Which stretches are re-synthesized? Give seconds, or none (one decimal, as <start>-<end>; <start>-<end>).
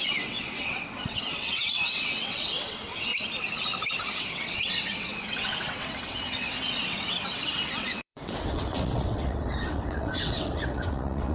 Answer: 0.0-3.1; 4.2-11.3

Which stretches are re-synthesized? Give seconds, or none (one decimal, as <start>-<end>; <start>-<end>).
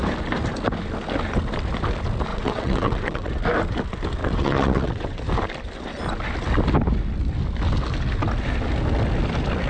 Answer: 2.3-3.3; 4.2-5.2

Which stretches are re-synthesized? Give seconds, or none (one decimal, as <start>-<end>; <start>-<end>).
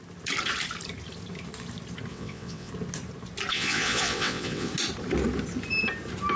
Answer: 2.1-2.7; 3.5-4.7